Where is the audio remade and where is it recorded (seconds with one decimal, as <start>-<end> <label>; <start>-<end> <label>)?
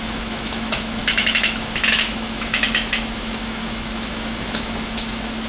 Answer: 0.0-5.5 remade